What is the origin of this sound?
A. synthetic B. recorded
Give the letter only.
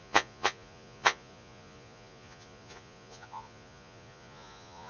A